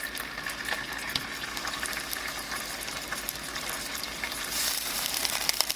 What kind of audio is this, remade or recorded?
remade